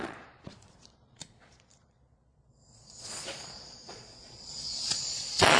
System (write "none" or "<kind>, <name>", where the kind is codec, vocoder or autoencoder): vocoder, Vocos